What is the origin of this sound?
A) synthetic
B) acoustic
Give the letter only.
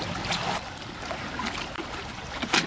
B